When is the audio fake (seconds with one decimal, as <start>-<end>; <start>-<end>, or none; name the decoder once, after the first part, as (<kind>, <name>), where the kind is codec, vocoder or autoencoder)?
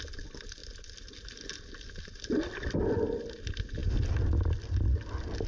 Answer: none